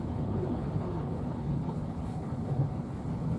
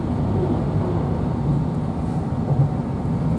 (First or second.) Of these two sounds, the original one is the second